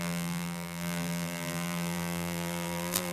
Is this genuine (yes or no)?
no